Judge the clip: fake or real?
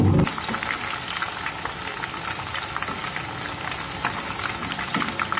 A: real